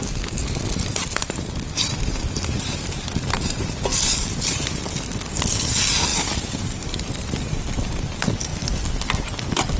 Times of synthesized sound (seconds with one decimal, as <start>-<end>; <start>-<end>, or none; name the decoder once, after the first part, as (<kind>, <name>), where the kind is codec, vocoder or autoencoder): 0.9-4.7 (vocoder, BigVGAN v2); 6.1-7.4

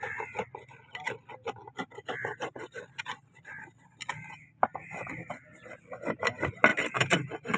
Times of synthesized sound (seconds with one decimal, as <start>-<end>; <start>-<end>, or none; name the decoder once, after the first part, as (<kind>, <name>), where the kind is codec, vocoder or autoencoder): 2.3-3.4 (vocoder, BigVGAN v2); 4.7-5.6; 6.7-7.6